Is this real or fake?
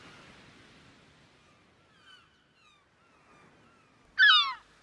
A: real